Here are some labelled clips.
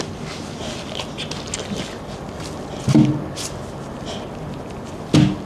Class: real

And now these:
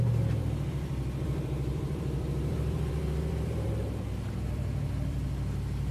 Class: fake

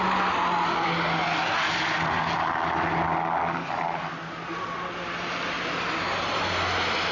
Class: real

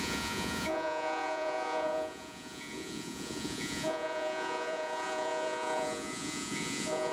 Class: fake